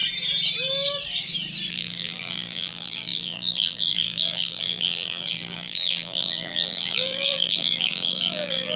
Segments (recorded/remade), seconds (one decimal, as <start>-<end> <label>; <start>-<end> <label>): 0.0-1.7 recorded; 1.7-8.8 remade